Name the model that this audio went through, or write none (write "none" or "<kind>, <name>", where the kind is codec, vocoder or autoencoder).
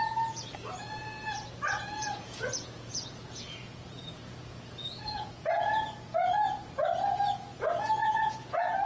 vocoder, Vocos